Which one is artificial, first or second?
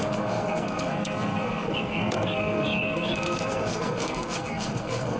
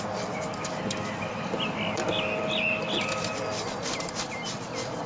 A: first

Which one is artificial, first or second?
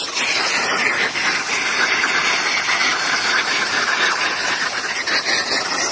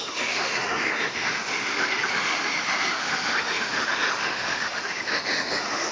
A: second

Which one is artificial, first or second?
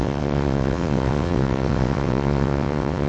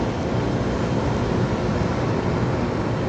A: first